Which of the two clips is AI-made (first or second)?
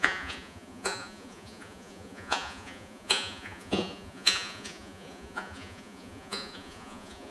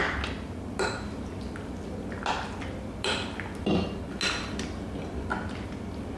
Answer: first